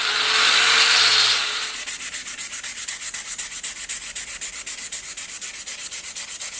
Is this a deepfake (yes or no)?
no